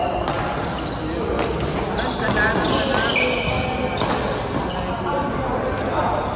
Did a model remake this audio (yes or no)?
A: no